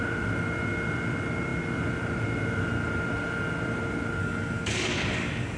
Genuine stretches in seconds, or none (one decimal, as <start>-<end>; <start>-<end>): 0.0-4.2